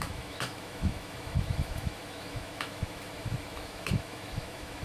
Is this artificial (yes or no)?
yes